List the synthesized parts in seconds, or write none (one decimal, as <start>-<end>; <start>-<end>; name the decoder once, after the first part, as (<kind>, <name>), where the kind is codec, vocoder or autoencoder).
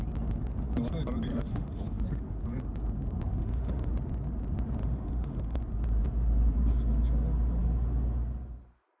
1.3-2.0 (autoencoder, DAC-VAE); 3.3-3.9; 4.8-5.6